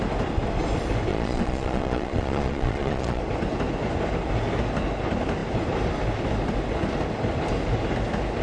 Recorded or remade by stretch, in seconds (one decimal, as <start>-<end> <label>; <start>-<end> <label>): 0.0-1.1 recorded; 1.1-3.2 remade; 3.2-8.4 recorded